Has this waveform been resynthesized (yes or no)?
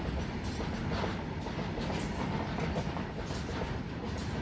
no